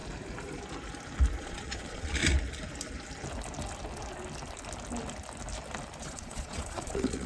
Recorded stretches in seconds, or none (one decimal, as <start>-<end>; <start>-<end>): 0.0-1.4; 2.2-6.0